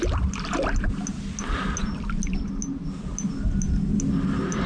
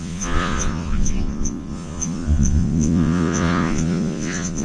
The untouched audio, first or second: first